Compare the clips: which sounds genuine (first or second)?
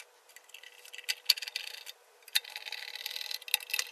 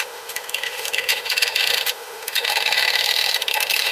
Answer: first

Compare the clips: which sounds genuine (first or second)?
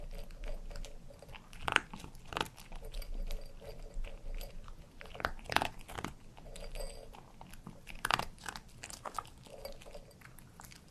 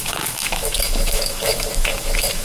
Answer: first